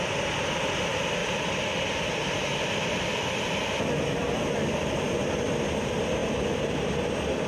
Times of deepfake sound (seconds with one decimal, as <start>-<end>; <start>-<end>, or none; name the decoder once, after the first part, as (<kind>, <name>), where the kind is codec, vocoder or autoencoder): none